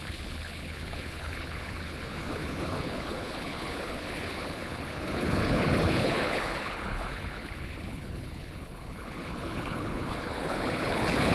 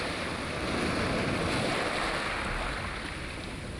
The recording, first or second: second